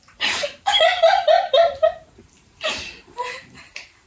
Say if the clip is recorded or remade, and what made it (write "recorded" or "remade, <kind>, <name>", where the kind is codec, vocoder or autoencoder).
remade, vocoder, BigVGAN v2